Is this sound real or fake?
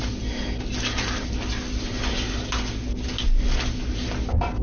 real